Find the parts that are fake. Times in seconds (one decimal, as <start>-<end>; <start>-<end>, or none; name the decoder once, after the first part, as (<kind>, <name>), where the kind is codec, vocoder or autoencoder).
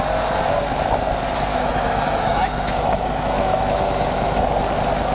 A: 1.5-4.4 (autoencoder, DAC-VAE)